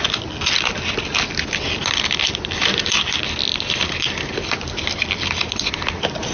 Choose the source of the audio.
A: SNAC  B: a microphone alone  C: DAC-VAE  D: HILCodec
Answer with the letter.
B